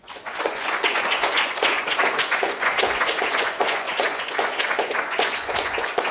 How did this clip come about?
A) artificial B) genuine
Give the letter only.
A